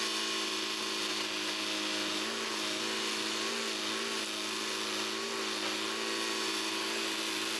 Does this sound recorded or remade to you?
recorded